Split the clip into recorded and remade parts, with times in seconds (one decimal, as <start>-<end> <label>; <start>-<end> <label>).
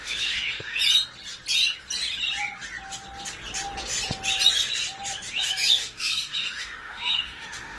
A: 0.0-0.8 remade; 0.8-5.3 recorded; 5.3-7.8 remade